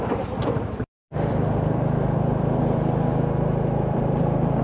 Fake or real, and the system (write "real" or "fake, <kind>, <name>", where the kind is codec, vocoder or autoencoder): fake, vocoder, BigVGAN v2